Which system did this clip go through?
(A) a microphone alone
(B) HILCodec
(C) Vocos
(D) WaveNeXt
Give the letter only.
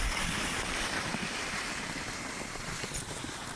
A